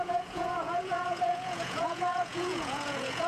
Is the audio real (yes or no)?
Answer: no